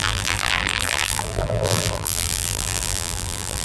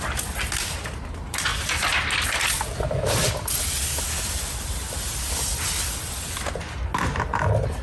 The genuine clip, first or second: second